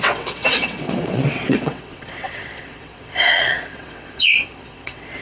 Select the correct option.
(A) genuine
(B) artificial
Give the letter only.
B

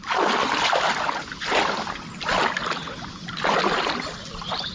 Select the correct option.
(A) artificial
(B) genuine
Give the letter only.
B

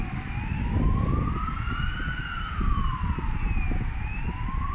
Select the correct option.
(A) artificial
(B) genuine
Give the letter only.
B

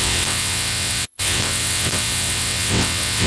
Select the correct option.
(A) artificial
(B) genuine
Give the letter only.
A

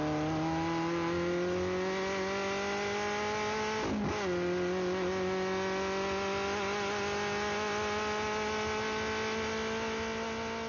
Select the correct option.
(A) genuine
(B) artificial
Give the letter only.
A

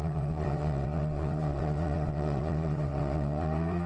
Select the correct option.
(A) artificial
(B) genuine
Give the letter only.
A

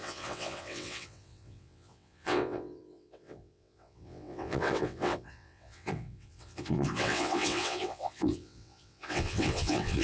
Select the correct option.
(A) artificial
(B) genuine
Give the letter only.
A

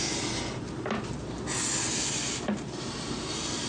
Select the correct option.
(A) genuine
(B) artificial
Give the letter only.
A